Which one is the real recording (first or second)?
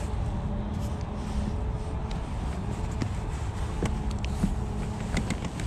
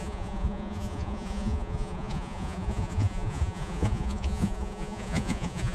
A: first